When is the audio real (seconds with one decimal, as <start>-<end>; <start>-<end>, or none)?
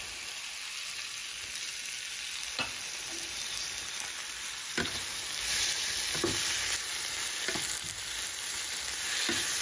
0.0-9.6